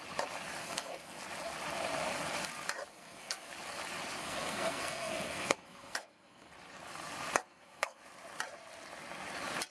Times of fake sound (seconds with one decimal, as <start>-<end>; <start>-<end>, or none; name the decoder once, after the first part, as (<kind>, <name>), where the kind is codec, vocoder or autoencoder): 0.6-1.2 (codec, SNAC); 2.9-3.5; 4.2-6.5; 7.4-8.0